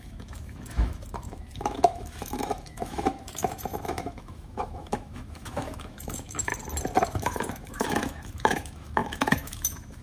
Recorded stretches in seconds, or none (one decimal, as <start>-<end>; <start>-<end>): 6.5-7.0